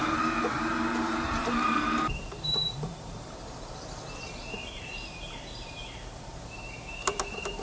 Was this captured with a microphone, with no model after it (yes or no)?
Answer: no